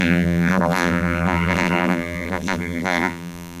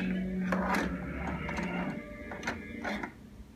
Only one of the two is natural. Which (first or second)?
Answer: second